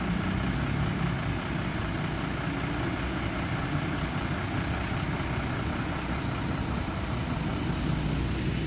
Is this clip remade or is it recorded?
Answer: recorded